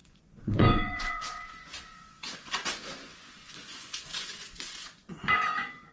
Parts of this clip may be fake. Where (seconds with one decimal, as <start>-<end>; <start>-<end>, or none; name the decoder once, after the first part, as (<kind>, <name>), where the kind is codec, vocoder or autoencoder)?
0.0-5.9 (vocoder, Vocos)